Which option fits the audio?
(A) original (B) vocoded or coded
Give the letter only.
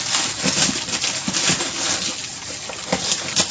A